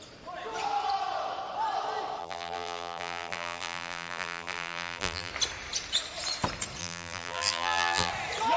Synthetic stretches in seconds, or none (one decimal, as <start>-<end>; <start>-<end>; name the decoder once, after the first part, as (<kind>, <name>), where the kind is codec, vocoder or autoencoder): 2.2-5.3 (vocoder, BigVGAN v2); 6.8-8.1

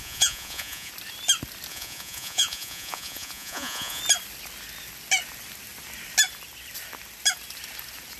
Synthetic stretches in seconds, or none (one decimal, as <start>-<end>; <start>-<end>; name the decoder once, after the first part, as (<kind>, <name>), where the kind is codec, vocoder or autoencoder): 0.0-0.9 (vocoder, Vocos); 1.7-4.0

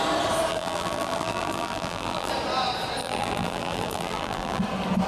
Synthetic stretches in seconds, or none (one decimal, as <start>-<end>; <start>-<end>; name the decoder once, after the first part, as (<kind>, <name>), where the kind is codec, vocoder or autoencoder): 0.5-2.3 (vocoder, BigVGAN v2); 3.0-4.6

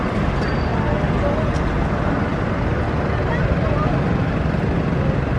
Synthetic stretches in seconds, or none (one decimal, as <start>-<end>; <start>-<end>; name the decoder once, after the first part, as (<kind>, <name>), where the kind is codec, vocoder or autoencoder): none

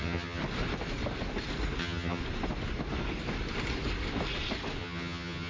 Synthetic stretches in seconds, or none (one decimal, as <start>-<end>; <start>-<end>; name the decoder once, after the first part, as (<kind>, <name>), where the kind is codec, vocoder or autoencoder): 0.0-0.4 (vocoder, HiFi-GAN); 1.8-2.2; 4.8-5.5

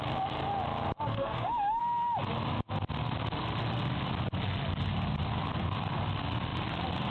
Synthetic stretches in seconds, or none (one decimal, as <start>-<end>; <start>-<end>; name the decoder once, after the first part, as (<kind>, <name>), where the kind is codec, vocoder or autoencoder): 1.1-1.8 (autoencoder, DAC-VAE)

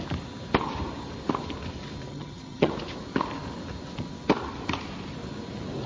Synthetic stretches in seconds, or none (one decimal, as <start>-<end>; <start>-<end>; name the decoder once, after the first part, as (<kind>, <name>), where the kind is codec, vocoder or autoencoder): 2.1-2.7 (vocoder, HiFi-GAN)

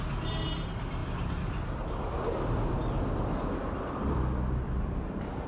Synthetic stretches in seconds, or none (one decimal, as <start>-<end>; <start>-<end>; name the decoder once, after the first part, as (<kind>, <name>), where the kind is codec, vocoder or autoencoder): none